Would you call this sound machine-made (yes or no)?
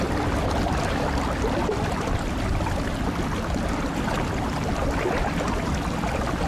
no